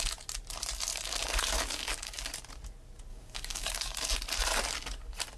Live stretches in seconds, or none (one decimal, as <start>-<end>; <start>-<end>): 0.0-0.9; 2.3-3.1; 4.1-5.4